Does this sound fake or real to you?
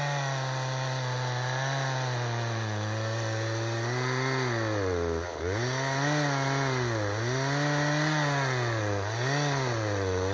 real